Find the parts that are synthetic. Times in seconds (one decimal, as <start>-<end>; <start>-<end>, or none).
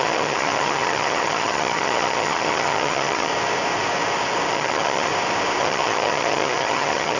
0.0-3.3; 4.5-5.1; 5.6-7.2